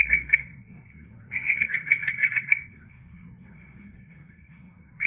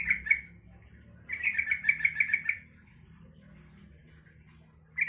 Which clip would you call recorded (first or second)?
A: second